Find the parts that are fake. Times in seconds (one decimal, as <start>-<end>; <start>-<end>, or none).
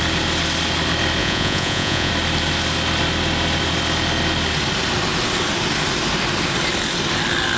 1.2-2.1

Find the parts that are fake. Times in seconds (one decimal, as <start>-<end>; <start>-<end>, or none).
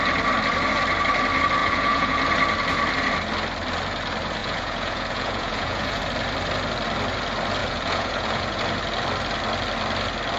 1.6-2.2; 4.4-6.0; 7.6-8.6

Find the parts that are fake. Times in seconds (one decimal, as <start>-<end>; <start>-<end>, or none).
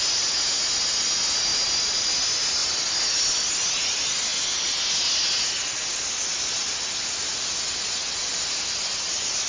none